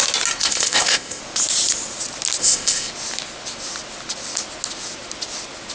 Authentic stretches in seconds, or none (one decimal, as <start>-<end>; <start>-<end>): 0.0-0.4; 1.2-2.4; 2.9-5.7